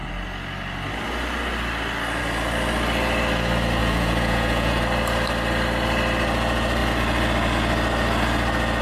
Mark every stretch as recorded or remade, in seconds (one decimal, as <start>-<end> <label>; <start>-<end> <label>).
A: 0.0-3.8 recorded; 3.8-4.8 remade; 4.8-8.8 recorded